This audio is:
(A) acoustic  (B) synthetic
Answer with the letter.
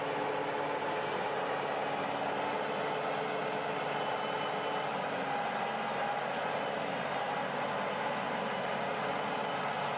A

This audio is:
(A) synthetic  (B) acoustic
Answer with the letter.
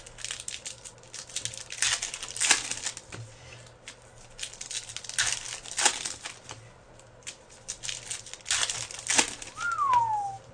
B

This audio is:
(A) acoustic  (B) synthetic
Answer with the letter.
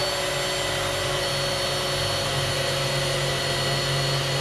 A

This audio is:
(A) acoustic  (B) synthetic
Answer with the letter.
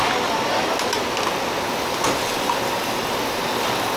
A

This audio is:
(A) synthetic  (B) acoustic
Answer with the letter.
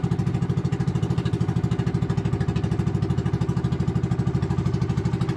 B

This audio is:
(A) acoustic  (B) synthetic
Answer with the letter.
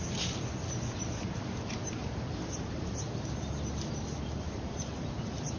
B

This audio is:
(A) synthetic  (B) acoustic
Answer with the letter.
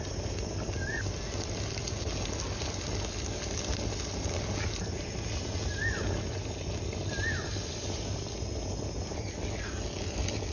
B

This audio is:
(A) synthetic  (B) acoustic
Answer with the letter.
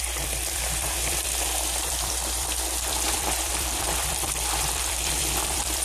A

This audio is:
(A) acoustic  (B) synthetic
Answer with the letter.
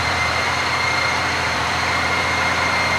B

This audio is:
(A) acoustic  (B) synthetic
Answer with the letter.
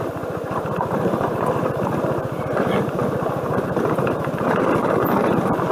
B